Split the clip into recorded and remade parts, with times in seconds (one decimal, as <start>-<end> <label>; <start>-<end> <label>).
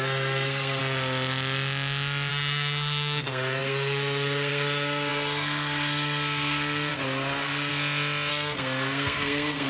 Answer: 0.0-0.8 remade; 0.8-2.3 recorded; 2.3-7.7 remade; 7.7-8.3 recorded; 8.3-9.7 remade